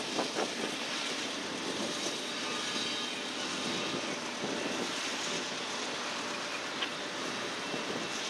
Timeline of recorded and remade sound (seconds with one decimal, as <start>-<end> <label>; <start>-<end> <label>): 0.0-8.3 recorded